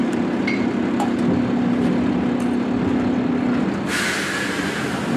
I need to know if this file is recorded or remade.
recorded